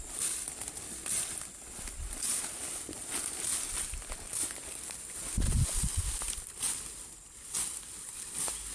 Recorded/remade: recorded